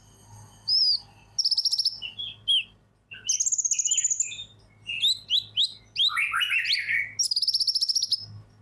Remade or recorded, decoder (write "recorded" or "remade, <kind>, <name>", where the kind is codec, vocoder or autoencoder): recorded